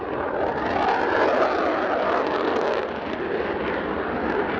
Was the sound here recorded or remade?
recorded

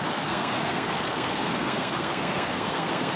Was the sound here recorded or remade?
remade